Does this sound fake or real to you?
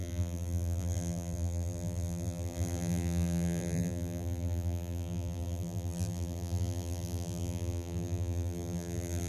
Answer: fake